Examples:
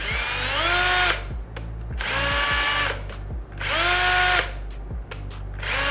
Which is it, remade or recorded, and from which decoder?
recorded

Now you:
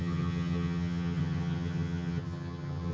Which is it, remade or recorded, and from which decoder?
remade, vocoder, HiFi-GAN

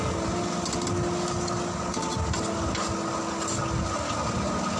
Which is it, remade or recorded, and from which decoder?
recorded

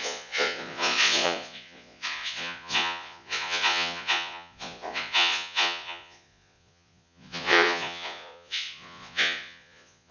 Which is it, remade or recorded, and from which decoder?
remade, vocoder, Vocos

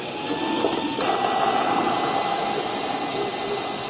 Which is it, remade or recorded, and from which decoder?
recorded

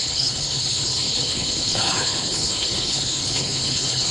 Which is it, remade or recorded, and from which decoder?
remade, codec, HILCodec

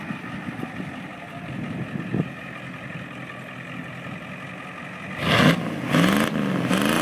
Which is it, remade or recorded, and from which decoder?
recorded